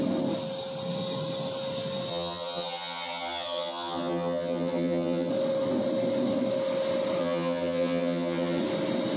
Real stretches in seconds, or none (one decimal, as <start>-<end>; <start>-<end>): 0.0-2.1; 5.3-7.2; 8.6-9.2